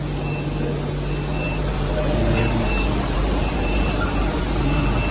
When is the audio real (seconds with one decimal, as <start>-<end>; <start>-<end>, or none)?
0.0-1.3; 4.4-5.1